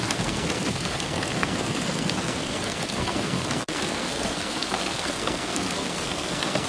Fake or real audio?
fake